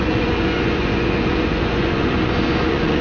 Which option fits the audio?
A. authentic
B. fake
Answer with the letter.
B